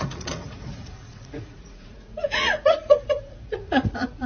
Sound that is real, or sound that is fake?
fake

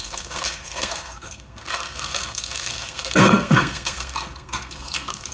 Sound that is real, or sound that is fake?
fake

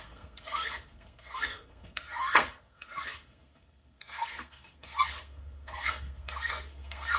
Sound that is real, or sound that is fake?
fake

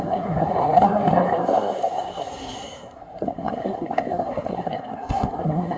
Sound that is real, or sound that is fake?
fake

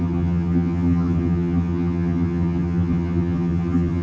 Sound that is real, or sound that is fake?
fake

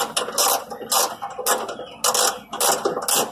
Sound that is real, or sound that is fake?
real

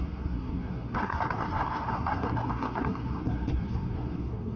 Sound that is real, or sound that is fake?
fake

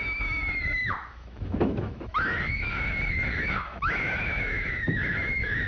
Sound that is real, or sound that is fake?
fake